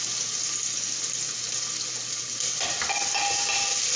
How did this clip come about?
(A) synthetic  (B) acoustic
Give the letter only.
B